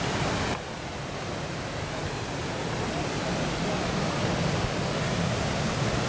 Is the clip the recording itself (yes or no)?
yes